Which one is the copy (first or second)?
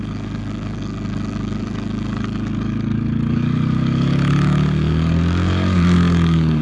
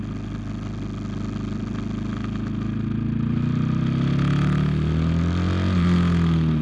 first